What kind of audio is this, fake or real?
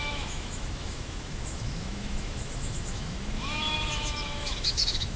fake